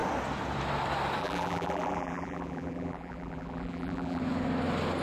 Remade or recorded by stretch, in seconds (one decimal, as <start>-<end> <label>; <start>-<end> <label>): 0.0-1.2 recorded; 1.2-4.2 remade; 4.2-5.0 recorded